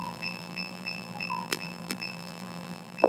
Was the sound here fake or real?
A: fake